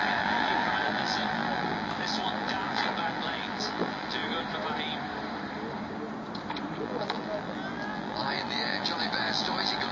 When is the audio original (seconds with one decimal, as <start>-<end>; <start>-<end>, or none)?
4.2-6.8